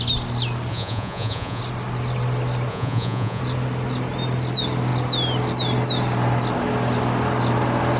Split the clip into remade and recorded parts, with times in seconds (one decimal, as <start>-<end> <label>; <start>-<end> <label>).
0.0-0.7 recorded; 0.7-1.6 remade; 1.6-2.7 recorded; 2.7-3.4 remade; 3.4-8.0 recorded